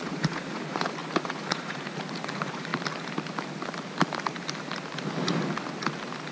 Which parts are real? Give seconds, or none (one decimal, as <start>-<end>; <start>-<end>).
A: 2.7-6.3